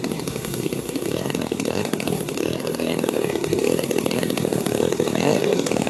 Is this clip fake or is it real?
fake